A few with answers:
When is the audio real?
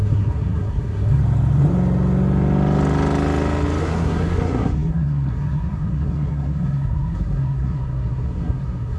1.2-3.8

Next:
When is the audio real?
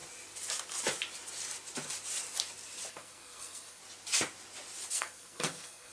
0.0-2.9; 3.8-4.9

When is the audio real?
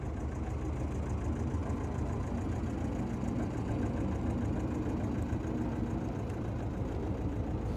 0.0-7.8